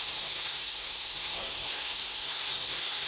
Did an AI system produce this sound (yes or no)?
yes